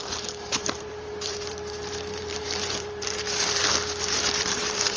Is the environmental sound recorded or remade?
remade